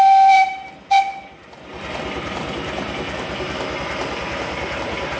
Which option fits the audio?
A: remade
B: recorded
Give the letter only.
B